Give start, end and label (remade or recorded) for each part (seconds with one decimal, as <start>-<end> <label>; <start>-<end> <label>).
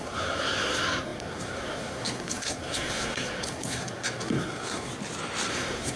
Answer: 0.0-4.9 remade; 4.9-5.5 recorded; 5.5-6.0 remade